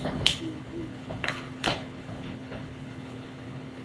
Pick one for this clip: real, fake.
fake